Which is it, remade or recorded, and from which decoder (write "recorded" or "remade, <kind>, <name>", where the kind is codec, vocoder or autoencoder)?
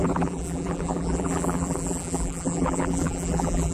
remade, vocoder, BigVGAN v2